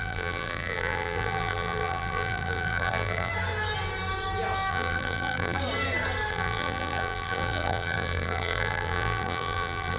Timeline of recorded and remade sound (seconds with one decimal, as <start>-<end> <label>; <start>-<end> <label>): 0.0-3.3 remade; 3.3-4.7 recorded; 4.7-5.6 remade; 5.6-6.3 recorded; 6.3-10.0 remade